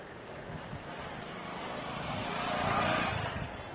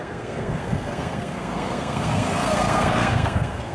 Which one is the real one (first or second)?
first